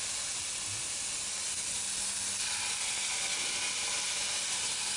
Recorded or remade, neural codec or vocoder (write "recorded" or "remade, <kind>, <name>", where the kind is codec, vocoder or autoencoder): recorded